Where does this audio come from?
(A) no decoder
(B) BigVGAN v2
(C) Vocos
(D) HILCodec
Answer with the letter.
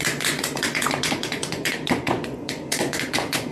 C